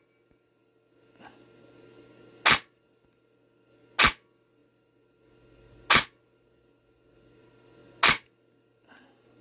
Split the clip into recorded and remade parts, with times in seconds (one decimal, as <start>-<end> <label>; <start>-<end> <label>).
0.0-9.4 recorded